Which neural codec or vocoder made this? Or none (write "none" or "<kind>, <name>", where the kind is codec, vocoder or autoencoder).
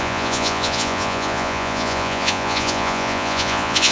vocoder, Vocos